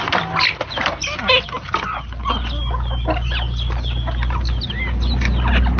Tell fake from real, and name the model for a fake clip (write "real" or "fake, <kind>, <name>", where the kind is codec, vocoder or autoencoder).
real